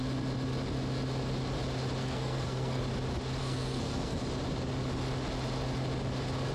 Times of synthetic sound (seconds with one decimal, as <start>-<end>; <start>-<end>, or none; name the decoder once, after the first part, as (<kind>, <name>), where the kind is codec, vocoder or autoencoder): 2.0-2.8 (codec, SNAC); 3.4-4.2